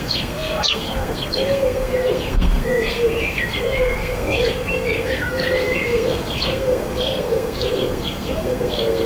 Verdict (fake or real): fake